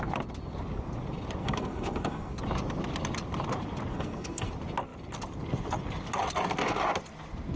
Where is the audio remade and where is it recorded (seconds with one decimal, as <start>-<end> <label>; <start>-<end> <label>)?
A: 0.0-1.4 recorded; 1.4-2.4 remade; 2.4-3.9 recorded; 3.9-4.5 remade; 4.5-7.6 recorded